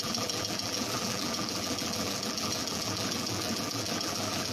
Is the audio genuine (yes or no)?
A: no